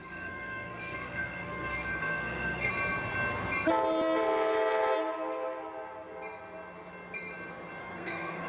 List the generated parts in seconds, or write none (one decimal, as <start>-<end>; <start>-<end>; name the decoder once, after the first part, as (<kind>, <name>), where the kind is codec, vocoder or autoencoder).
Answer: 0.0-2.7 (codec, SNAC); 7.8-8.5